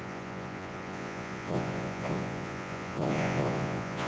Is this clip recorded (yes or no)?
no